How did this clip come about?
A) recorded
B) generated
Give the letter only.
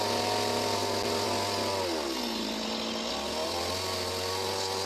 A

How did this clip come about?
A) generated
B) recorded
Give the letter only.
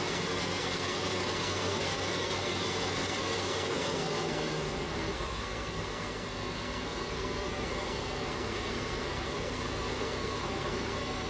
A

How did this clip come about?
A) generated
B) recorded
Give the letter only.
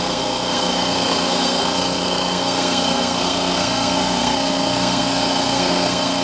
A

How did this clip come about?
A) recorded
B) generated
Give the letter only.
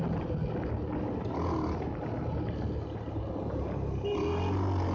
A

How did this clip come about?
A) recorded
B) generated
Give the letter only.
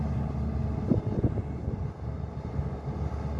A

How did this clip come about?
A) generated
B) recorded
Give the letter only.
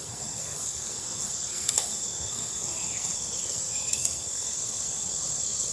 A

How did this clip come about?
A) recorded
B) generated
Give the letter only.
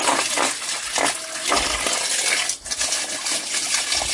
A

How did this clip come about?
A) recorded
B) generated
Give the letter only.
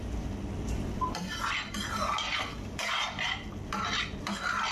A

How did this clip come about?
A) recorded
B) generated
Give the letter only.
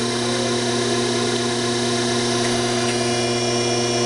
A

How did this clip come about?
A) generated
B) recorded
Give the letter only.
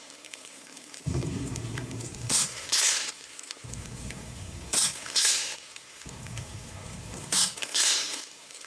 A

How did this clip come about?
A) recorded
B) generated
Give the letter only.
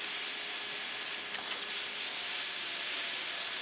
A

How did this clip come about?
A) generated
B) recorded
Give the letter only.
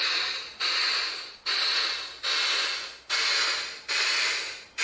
B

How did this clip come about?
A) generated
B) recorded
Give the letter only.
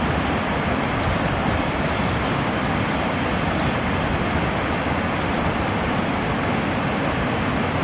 B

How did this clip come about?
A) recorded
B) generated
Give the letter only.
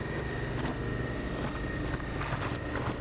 A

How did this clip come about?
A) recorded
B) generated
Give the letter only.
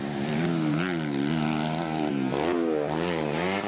A